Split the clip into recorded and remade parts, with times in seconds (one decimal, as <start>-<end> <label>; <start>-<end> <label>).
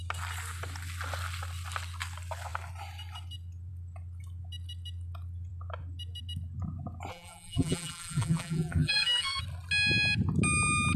0.0-7.1 recorded; 7.1-9.4 remade; 9.4-11.0 recorded